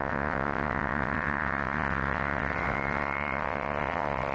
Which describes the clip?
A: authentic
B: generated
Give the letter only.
B